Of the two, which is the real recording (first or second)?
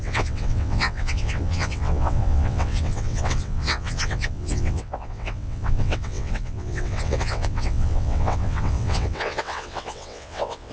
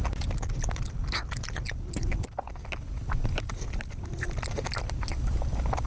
second